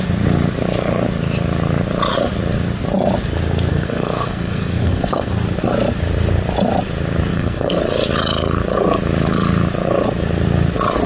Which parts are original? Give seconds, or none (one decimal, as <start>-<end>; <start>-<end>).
0.0-3.7; 5.3-7.3; 7.8-11.1